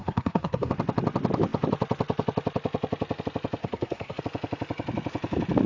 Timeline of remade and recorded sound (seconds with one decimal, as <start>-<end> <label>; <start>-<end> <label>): 0.0-0.7 remade; 0.7-3.6 recorded; 3.6-4.2 remade; 4.2-5.7 recorded